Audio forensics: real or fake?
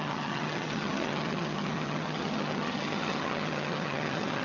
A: fake